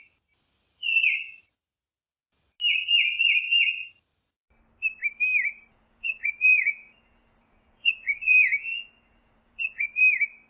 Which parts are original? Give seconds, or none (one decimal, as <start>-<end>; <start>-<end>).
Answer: 0.0-5.7; 10.0-10.5

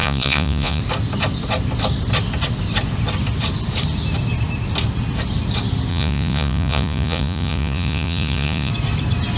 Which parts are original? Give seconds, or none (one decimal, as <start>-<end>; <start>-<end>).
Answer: 0.8-5.9; 8.7-9.4

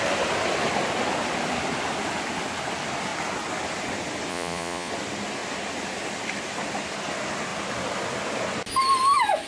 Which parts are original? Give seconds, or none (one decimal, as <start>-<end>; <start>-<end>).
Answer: 0.0-4.3; 4.9-9.5

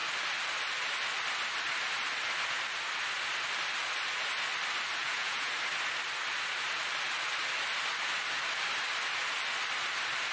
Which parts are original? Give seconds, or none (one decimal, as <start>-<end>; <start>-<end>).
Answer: 0.0-5.0; 5.5-10.3